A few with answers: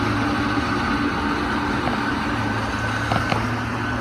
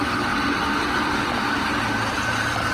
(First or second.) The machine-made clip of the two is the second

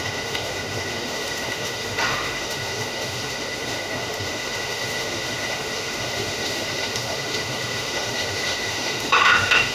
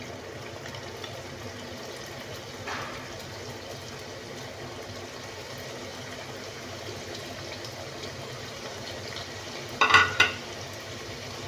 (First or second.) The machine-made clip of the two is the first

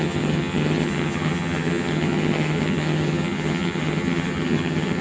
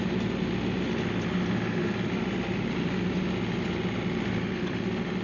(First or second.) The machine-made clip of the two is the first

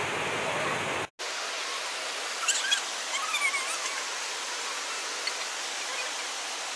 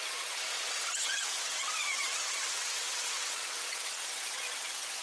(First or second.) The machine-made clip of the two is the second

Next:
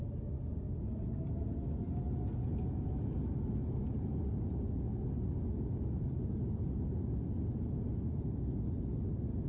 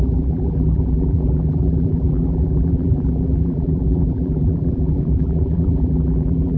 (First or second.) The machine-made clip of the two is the second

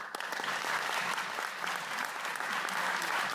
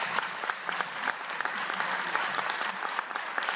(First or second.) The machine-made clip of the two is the second